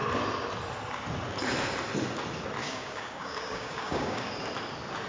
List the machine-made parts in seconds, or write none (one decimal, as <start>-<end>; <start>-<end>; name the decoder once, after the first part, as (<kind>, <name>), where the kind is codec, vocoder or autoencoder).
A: 2.6-4.3 (codec, DAC)